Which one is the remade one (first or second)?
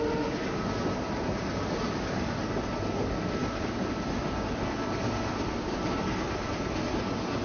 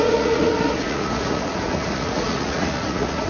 second